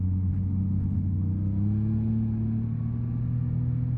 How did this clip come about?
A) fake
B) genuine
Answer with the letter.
B